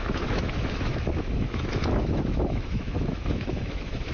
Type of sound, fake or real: fake